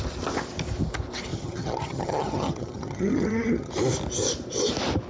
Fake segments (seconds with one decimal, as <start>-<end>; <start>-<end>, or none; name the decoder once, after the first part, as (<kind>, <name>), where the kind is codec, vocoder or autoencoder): 1.3-3.7 (vocoder, HiFi-GAN)